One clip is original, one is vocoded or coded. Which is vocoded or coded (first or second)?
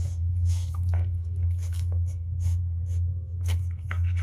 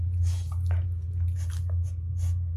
first